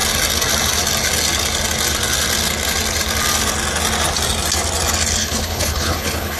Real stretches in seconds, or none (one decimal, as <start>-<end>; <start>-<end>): 0.0-5.2